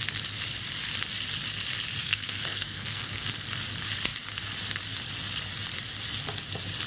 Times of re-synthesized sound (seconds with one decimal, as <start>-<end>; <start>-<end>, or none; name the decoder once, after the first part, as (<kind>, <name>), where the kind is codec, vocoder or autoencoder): 2.0-3.3 (codec, SNAC)